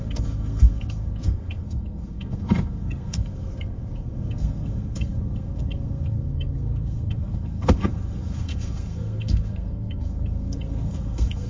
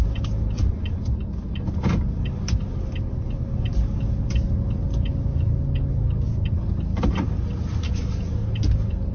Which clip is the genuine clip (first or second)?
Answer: second